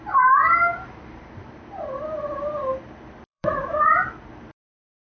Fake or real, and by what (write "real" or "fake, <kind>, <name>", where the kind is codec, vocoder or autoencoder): fake, vocoder, BigVGAN v2